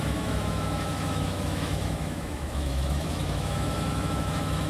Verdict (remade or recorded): remade